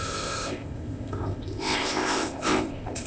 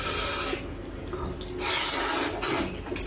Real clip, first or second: second